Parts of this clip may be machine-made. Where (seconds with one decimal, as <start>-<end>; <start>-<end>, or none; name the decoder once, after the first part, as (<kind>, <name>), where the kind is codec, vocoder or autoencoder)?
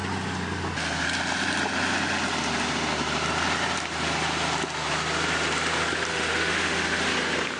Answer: 6.1-7.1 (autoencoder, DAC-VAE)